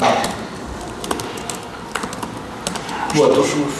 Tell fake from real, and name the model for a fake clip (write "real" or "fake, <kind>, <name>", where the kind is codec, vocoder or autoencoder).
real